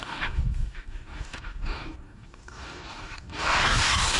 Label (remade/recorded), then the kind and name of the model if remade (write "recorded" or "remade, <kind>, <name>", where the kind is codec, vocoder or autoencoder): remade, codec, DAC